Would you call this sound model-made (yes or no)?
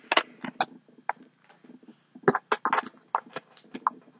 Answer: no